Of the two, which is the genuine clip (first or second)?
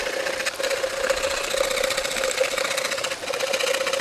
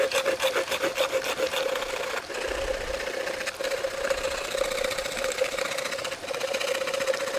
first